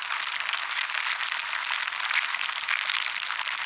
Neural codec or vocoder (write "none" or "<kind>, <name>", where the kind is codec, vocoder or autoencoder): none